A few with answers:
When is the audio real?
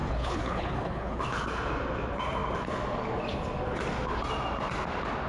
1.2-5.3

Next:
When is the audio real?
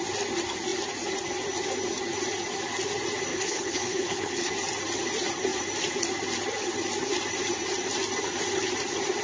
0.0-3.3; 4.5-9.2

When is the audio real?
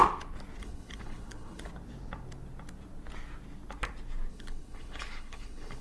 0.0-0.6; 1.7-4.3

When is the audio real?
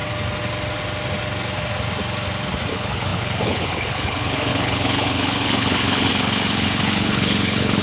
0.0-2.7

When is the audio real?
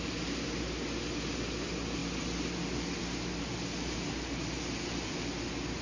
0.0-5.8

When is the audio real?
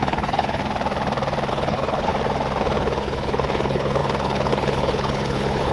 0.6-1.5; 2.1-2.6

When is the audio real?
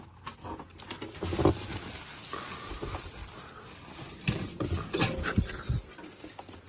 0.0-6.7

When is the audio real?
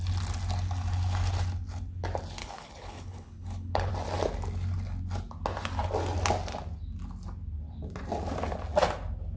0.0-2.4; 3.9-9.4